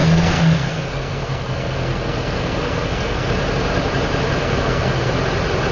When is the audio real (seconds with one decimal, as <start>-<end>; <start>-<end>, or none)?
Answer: 3.4-4.4; 5.1-5.7